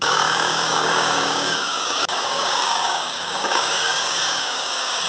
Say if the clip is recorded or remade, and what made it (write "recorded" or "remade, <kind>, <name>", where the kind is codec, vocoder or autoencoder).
remade, codec, DAC